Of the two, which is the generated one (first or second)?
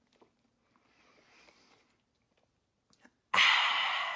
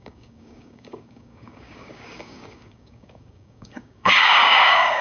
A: second